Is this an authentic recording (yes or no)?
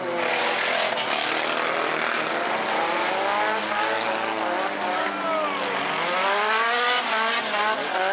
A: yes